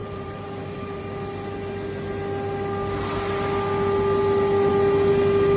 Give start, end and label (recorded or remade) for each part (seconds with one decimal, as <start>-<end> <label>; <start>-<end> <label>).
0.0-1.0 remade; 1.0-5.6 recorded